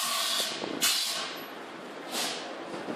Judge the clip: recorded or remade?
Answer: recorded